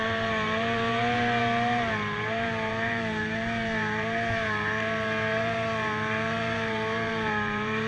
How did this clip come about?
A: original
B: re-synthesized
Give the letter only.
B